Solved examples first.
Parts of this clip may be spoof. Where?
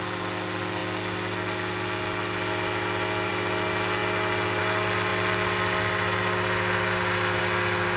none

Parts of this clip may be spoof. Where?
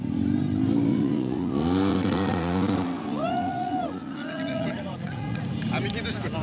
0.9-1.5 (vocoder, Vocos); 1.9-5.4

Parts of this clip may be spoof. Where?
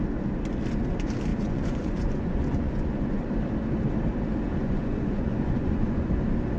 1.3-3.3 (vocoder, Vocos); 4.5-6.1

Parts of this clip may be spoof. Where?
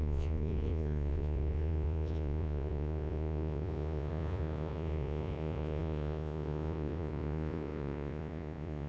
0.0-8.9 (vocoder, Vocos)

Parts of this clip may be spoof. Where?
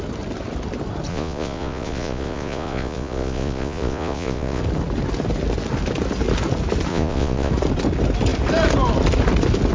1.1-4.6 (vocoder, Vocos); 6.9-7.5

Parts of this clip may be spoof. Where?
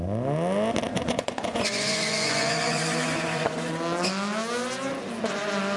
0.9-3.7 (vocoder, Vocos)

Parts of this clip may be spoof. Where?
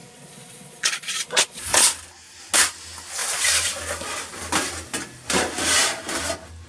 0.0-1.8 (vocoder, Vocos)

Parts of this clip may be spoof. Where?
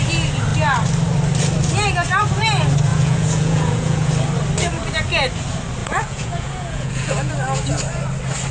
2.9-4.1 (vocoder, Vocos); 5.8-7.3